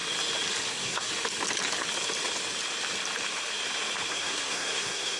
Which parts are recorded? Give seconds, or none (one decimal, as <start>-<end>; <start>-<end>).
0.0-0.7; 1.1-4.1